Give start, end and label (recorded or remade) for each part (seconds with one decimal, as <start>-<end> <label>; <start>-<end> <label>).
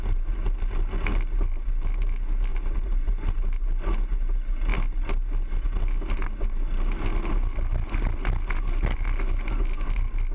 0.0-2.5 recorded; 2.5-3.1 remade; 3.1-10.3 recorded